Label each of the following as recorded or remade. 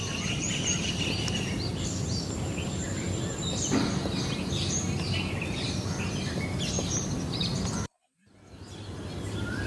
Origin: remade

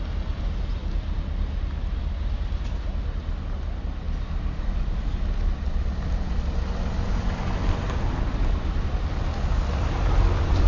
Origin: recorded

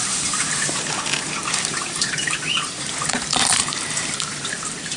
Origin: remade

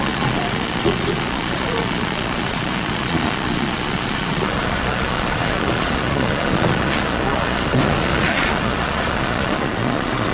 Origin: remade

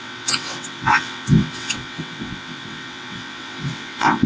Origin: remade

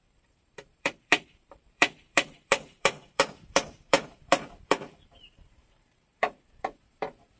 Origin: remade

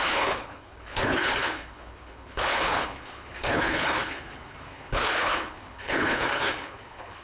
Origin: remade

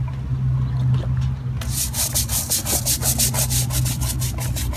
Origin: recorded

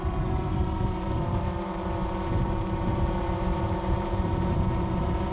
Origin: remade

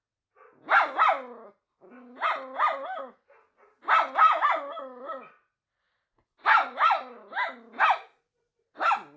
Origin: recorded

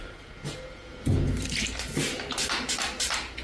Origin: recorded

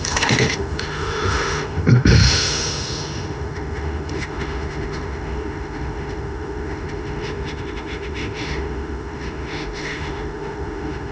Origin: remade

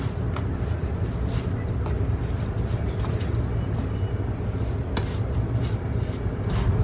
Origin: recorded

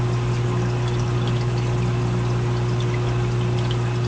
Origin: recorded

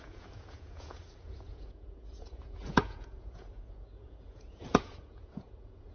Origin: remade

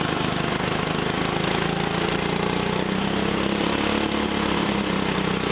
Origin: recorded